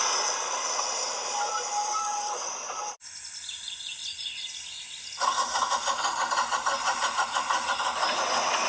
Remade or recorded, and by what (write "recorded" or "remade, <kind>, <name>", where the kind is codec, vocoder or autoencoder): recorded